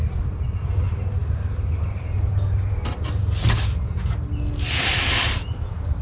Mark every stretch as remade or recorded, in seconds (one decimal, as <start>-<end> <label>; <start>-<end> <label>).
0.0-6.0 recorded